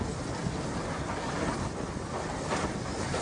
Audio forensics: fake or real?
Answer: real